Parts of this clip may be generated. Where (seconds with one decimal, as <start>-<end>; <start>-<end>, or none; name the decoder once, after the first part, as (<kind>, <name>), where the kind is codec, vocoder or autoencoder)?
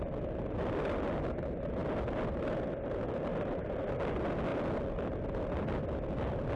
none